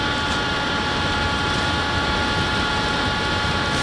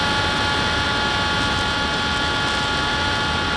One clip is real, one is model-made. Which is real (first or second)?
second